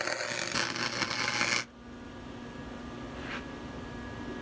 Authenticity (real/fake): real